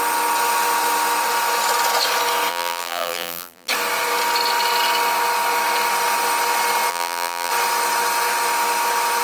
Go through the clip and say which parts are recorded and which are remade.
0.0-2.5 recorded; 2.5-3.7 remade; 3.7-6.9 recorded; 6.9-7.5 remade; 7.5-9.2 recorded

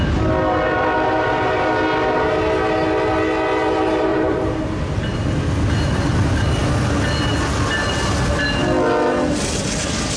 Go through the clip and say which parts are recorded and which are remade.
0.0-4.1 recorded; 4.1-4.8 remade; 4.8-10.2 recorded

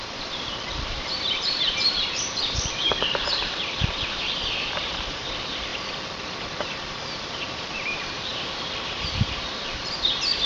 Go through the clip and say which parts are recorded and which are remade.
0.0-5.7 remade; 5.7-6.4 recorded; 6.4-8.3 remade; 8.3-9.0 recorded; 9.0-10.5 remade

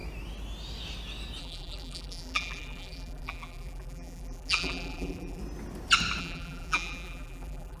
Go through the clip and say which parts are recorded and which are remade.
0.0-1.4 recorded; 1.4-5.4 remade; 5.4-6.2 recorded; 6.2-7.8 remade